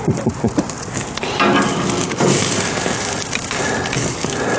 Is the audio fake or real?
real